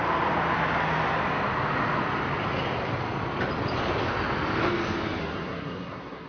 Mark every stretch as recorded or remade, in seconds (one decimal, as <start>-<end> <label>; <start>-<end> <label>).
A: 0.0-5.2 recorded; 5.2-6.3 remade

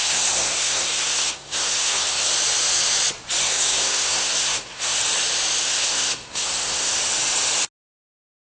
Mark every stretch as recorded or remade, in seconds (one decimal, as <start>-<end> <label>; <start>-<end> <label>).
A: 0.0-2.3 remade; 2.3-3.4 recorded; 3.4-5.0 remade; 5.0-5.6 recorded; 5.6-6.9 remade; 6.9-8.5 recorded

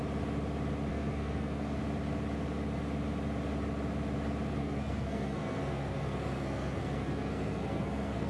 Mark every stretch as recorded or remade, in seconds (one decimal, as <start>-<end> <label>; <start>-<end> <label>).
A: 0.0-0.9 recorded; 0.9-1.8 remade; 1.8-4.6 recorded; 4.6-8.3 remade

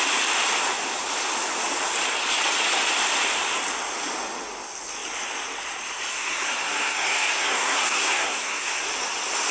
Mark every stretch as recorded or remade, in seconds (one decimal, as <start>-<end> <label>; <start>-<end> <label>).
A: 0.0-6.1 recorded; 6.1-8.9 remade; 8.9-9.5 recorded

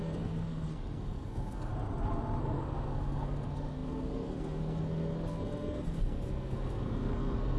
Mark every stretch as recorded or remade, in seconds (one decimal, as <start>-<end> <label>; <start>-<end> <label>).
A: 0.0-1.7 remade; 1.7-2.4 recorded; 2.4-7.6 remade

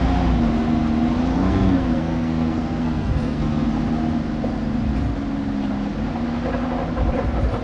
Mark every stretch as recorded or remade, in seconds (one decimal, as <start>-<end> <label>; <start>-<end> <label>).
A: 0.0-1.3 recorded; 1.3-3.7 remade; 3.7-7.6 recorded

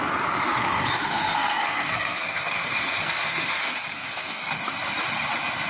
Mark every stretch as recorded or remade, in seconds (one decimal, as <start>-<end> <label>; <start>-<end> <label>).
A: 0.0-1.1 recorded; 1.1-4.5 remade; 4.5-5.7 recorded